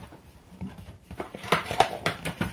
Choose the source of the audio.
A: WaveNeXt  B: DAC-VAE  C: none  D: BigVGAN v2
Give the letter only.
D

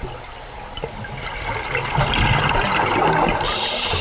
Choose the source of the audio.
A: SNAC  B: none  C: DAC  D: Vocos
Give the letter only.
B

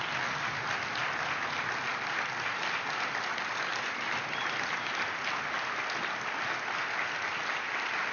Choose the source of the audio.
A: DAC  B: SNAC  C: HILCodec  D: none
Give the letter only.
D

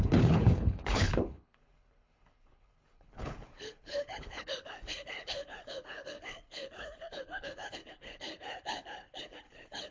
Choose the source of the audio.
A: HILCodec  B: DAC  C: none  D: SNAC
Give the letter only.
A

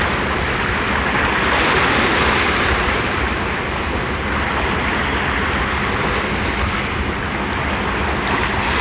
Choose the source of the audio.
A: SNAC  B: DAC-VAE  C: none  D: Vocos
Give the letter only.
C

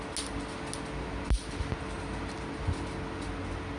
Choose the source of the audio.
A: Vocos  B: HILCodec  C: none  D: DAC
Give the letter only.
C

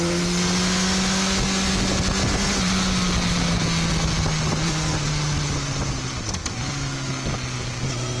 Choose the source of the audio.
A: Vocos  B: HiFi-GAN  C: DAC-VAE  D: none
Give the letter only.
D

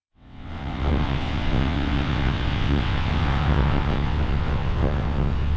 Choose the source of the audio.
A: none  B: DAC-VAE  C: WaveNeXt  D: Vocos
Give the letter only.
C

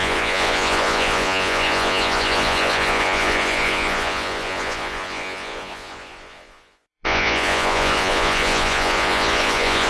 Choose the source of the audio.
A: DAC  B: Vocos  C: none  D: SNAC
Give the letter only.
B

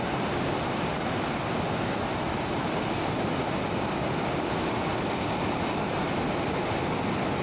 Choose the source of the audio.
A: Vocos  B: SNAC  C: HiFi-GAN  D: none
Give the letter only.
D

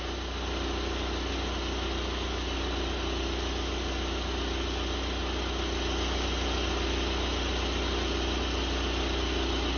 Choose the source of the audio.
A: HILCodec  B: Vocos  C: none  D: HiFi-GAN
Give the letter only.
C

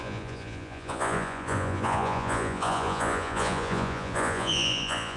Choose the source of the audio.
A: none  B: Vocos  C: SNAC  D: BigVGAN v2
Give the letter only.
B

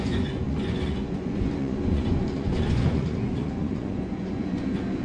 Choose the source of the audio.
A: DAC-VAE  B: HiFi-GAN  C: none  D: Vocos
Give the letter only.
D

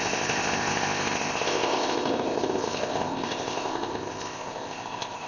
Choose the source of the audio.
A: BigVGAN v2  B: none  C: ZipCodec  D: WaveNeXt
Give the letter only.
C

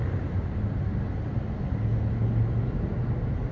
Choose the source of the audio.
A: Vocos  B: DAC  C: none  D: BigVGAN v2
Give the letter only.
C